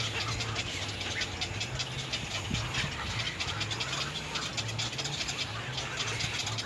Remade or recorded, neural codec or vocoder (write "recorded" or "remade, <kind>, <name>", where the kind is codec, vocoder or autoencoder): recorded